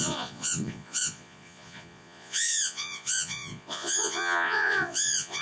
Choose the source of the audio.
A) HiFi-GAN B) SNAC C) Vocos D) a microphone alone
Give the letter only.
C